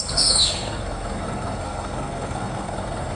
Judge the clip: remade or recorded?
remade